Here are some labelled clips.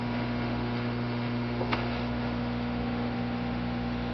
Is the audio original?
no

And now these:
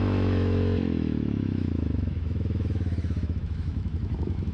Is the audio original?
no